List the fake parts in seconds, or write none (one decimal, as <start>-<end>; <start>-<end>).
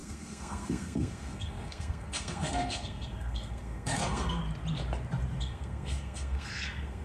0.0-4.4; 5.4-7.0